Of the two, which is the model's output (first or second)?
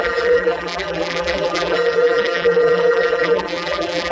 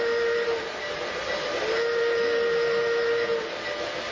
first